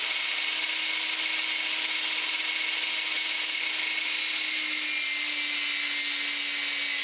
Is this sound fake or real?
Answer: real